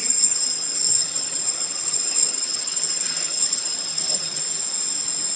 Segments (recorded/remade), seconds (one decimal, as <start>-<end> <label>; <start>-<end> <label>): 0.0-4.4 remade; 4.4-5.4 recorded